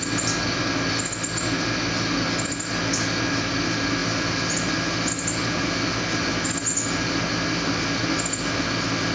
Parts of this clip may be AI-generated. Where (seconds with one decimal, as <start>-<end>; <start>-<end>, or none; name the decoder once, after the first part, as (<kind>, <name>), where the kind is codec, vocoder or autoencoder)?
none